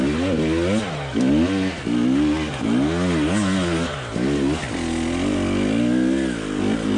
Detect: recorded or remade recorded